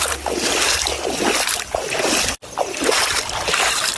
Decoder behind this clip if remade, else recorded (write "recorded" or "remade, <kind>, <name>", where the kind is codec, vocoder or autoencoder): recorded